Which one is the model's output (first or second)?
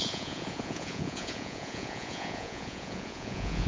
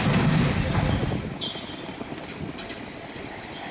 first